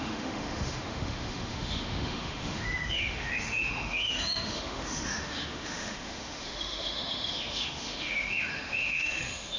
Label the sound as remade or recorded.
remade